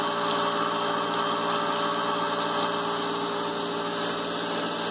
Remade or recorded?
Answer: recorded